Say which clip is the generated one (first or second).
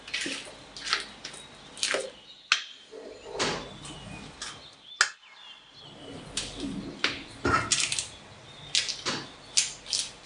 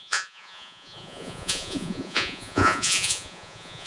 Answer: second